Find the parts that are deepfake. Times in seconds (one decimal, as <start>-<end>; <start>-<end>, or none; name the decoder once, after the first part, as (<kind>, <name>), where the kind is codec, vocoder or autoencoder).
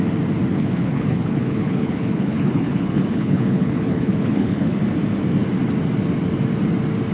0.5-4.8 (codec, HILCodec)